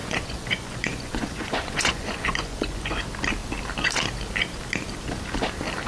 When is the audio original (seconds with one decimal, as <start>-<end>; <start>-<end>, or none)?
3.0-5.9

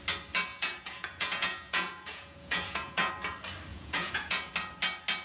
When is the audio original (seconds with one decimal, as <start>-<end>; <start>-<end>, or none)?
0.0-0.5; 3.1-3.7; 4.5-5.2

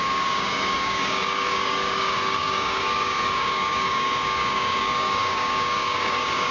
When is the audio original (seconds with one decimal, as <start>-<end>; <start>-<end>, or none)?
none

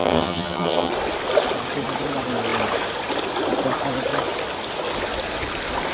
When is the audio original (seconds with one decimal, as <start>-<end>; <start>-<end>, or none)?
0.9-5.9